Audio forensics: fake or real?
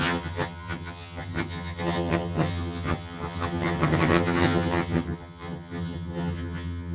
fake